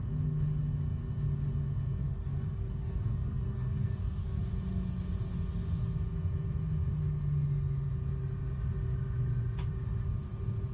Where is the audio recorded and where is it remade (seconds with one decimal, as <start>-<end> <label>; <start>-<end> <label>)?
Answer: 0.0-2.0 recorded; 2.0-4.4 remade; 4.4-10.7 recorded